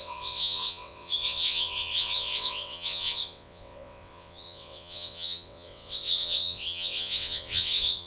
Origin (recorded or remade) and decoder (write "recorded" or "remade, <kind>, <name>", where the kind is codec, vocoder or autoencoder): remade, vocoder, WaveNeXt